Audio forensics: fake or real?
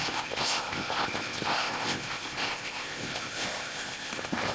fake